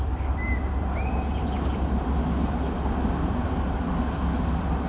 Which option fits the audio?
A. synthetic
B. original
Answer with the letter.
B